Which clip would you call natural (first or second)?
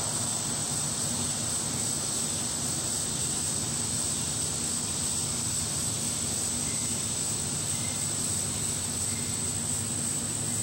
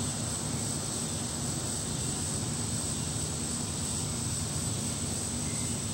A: second